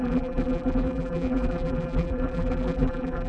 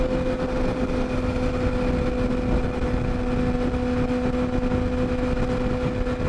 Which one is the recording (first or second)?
second